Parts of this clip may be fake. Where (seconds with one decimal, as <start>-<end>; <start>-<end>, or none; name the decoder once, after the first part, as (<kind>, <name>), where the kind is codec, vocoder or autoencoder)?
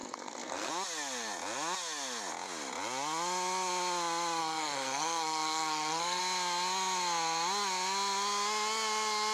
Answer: 0.0-0.7 (codec, SNAC); 4.4-6.2